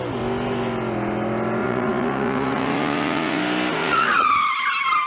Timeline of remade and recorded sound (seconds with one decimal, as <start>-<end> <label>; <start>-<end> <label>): 0.0-1.6 recorded; 1.6-3.4 remade; 3.4-3.8 recorded; 3.8-4.4 remade; 4.4-5.1 recorded